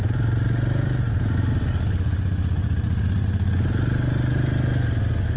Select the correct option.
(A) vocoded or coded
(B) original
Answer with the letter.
B